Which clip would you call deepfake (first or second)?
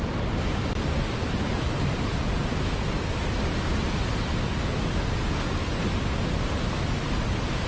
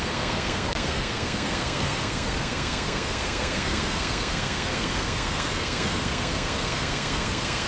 second